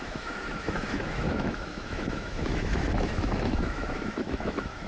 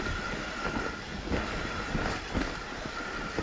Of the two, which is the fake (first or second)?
first